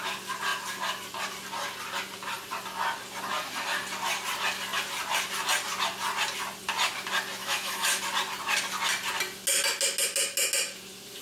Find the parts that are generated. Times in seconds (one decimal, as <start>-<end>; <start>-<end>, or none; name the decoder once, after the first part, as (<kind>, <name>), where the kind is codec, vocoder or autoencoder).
7.4-8.0 (autoencoder, DAC-VAE)